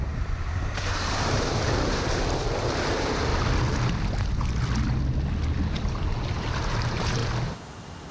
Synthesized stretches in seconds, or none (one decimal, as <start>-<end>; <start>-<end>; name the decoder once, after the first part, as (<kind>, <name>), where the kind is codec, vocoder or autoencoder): 0.0-3.3 (vocoder, BigVGAN v2); 5.8-7.2